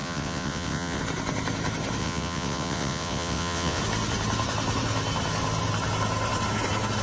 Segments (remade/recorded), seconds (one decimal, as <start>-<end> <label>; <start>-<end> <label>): 0.0-1.0 remade; 1.0-2.0 recorded; 2.0-3.8 remade; 3.8-7.0 recorded